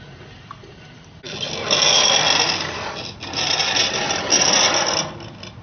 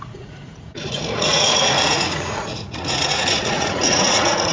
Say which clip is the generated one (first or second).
second